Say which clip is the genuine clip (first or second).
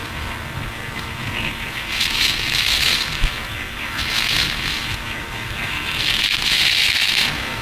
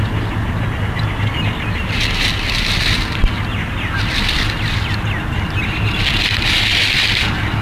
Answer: second